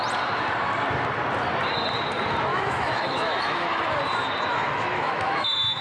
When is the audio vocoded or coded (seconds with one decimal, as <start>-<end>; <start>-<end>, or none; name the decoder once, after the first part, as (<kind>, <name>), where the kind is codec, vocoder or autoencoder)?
2.5-3.8 (autoencoder, DAC-VAE); 4.5-5.8